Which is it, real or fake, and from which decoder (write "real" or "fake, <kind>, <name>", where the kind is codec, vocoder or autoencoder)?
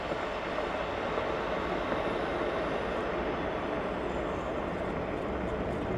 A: real